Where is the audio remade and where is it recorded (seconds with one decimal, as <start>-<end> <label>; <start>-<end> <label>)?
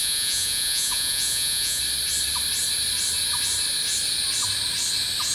0.0-1.8 remade; 1.8-5.3 recorded